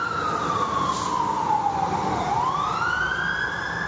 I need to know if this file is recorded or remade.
recorded